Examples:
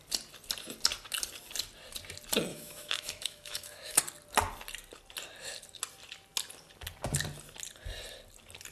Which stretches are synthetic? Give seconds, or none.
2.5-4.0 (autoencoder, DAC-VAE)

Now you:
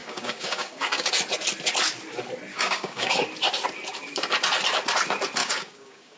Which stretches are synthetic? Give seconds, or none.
0.0-1.1 (codec, DAC); 2.5-3.2; 5.4-6.2